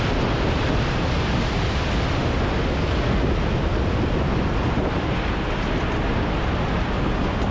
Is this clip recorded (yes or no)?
yes